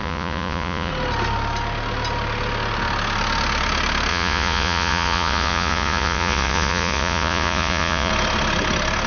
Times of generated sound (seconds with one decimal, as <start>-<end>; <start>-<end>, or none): 0.0-0.9; 4.1-8.1